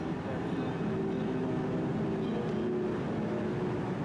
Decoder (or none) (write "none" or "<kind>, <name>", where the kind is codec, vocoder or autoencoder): none